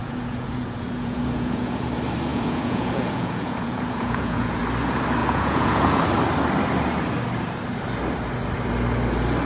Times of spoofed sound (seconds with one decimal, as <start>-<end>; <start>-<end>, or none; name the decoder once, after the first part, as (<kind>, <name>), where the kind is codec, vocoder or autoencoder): 0.0-1.9 (vocoder, Vocos); 2.3-4.6; 5.2-6.0